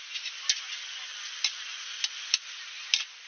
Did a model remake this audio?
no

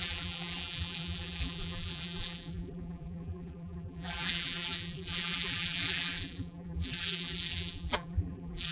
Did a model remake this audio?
yes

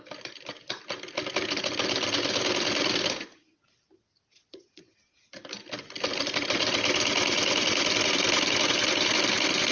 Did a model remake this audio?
no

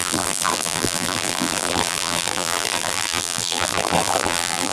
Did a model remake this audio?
yes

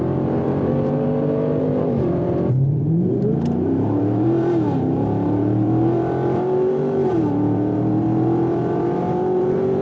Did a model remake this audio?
yes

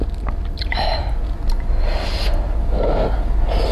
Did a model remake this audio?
no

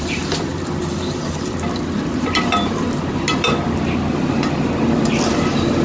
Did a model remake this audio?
yes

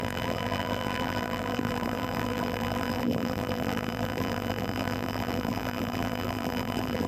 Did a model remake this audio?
yes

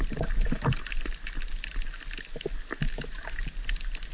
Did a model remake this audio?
no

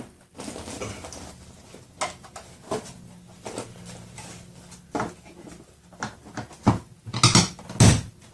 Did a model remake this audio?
no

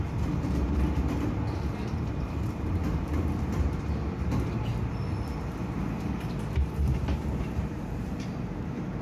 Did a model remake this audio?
yes